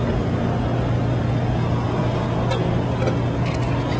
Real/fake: real